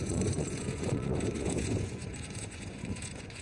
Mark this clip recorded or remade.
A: remade